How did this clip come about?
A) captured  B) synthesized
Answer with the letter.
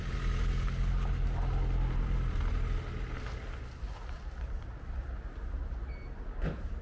A